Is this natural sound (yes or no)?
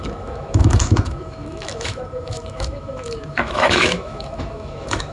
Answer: no